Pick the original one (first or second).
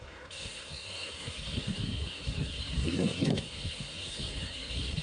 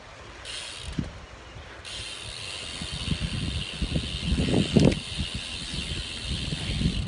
second